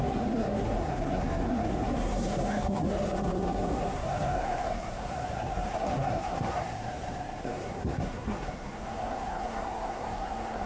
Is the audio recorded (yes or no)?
no